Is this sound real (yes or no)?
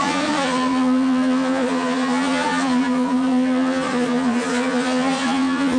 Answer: no